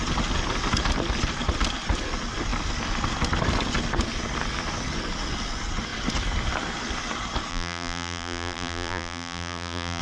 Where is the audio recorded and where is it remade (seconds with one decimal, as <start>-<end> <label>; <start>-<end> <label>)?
0.0-7.5 recorded; 7.5-10.0 remade